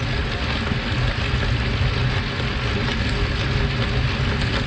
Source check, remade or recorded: recorded